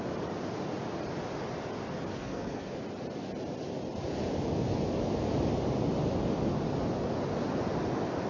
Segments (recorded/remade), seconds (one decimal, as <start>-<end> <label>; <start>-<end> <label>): 0.0-2.2 recorded; 2.2-2.7 remade; 2.7-8.3 recorded